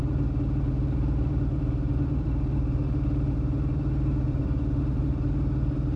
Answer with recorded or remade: remade